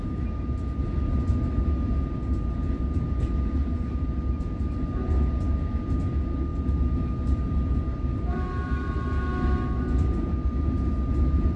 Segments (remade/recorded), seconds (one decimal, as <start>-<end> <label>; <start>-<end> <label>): 0.0-11.6 recorded